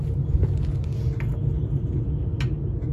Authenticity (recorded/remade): recorded